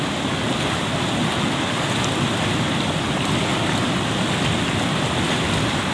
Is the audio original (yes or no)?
yes